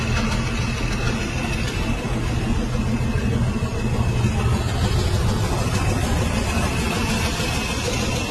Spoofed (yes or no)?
no